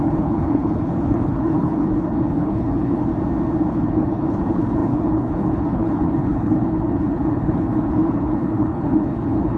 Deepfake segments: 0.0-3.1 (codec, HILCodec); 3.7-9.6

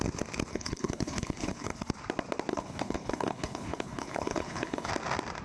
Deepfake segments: 0.5-1.9 (codec, HILCodec); 2.5-4.9

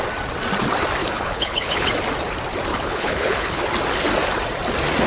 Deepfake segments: 1.0-1.9 (codec, HILCodec); 2.7-3.6

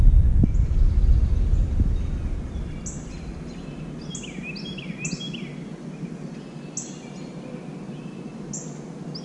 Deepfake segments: none

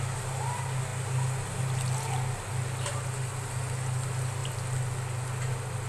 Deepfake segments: none